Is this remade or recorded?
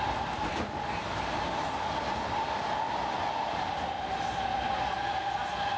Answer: recorded